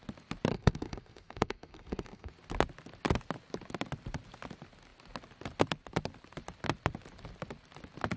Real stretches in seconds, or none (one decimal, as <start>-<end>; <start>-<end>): 0.0-0.5; 2.3-8.2